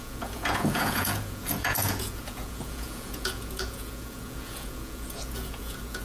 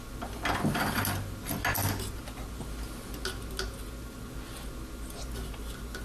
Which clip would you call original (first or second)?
second